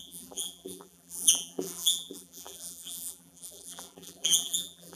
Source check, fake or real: fake